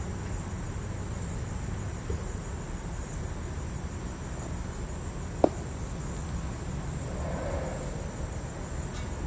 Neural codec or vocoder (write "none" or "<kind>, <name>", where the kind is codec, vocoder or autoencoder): none